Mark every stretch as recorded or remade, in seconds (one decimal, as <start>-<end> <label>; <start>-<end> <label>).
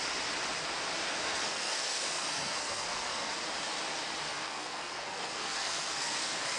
0.0-1.1 recorded; 1.1-3.3 remade; 3.3-4.3 recorded; 4.3-6.6 remade